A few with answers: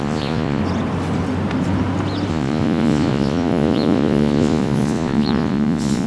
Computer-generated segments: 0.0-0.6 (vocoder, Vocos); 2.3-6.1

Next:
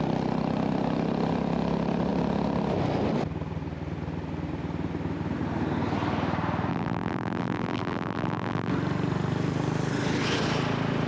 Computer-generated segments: 6.7-8.7 (vocoder, BigVGAN v2)

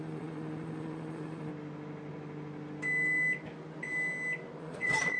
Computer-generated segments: 0.0-1.5 (vocoder, Vocos); 4.6-5.2